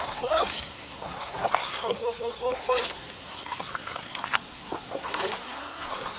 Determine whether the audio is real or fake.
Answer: fake